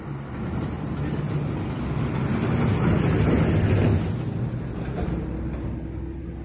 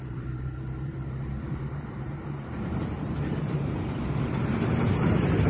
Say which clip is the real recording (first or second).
first